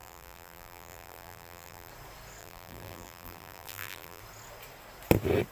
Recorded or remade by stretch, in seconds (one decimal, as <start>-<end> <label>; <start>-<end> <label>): 0.0-1.9 remade; 1.9-2.4 recorded; 2.4-4.2 remade; 4.2-5.5 recorded